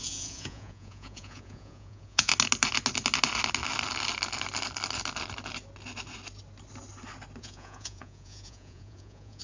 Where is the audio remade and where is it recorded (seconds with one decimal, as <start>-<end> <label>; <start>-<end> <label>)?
0.0-2.3 remade; 2.3-7.4 recorded; 7.4-9.4 remade